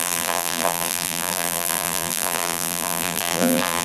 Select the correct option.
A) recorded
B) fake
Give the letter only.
B